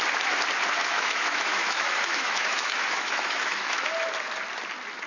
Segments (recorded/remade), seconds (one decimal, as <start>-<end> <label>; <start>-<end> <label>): 0.0-0.8 recorded; 0.8-3.9 remade; 3.9-5.1 recorded